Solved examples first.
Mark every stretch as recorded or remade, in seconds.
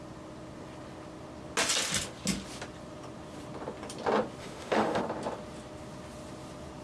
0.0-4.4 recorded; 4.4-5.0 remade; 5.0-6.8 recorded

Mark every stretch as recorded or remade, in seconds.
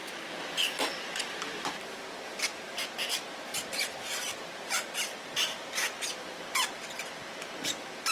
0.0-8.1 remade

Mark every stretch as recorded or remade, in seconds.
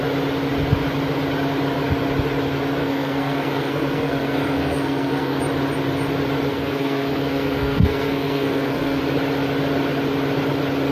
0.0-2.8 recorded; 2.8-5.4 remade; 5.4-6.5 recorded; 6.5-9.0 remade; 9.0-10.9 recorded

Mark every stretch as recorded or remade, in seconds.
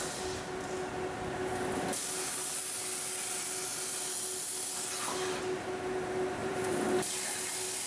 0.0-6.4 recorded; 6.4-7.1 remade; 7.1-7.9 recorded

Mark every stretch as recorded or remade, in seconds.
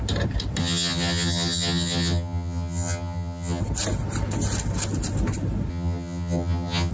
0.0-0.6 recorded; 0.6-3.6 remade; 3.6-5.7 recorded; 5.7-6.9 remade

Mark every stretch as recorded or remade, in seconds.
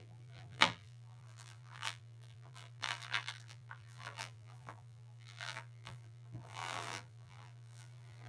0.0-8.3 remade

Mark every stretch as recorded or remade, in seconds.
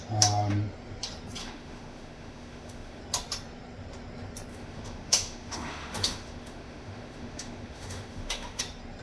0.0-1.4 recorded; 1.4-3.0 remade; 3.0-4.5 recorded; 4.5-8.6 remade; 8.6-9.0 recorded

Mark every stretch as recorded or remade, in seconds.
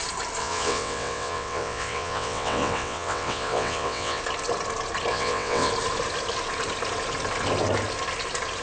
0.0-0.4 recorded; 0.4-4.2 remade; 4.2-5.1 recorded; 5.1-5.7 remade; 5.7-8.6 recorded